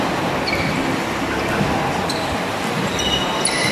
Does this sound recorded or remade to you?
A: recorded